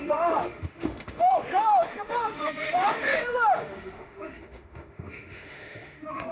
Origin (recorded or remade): remade